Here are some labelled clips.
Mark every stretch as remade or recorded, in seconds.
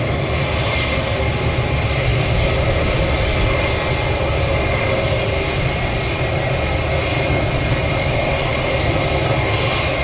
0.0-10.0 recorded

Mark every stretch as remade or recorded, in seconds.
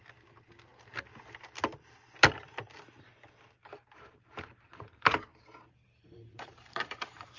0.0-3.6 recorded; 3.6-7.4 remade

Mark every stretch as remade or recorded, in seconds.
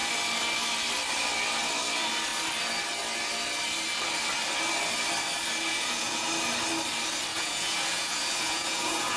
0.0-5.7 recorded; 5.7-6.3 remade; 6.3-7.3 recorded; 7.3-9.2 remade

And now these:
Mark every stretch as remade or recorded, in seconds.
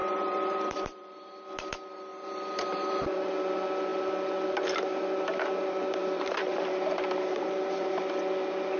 0.0-1.3 remade; 1.3-2.1 recorded; 2.1-3.3 remade; 3.3-6.0 recorded; 6.0-8.0 remade; 8.0-8.8 recorded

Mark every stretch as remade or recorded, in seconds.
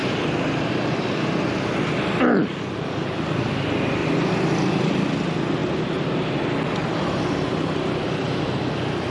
0.0-9.1 recorded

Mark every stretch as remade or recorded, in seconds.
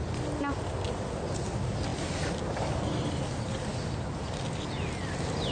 0.0-5.5 recorded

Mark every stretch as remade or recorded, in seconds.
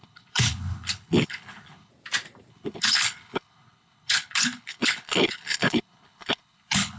0.0-1.9 remade; 1.9-2.5 recorded; 2.5-7.0 remade